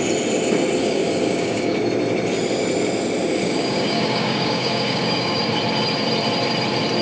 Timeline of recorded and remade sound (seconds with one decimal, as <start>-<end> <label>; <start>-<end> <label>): 0.0-0.8 recorded; 0.8-1.8 remade; 1.8-3.4 recorded; 3.4-5.4 remade; 5.4-7.0 recorded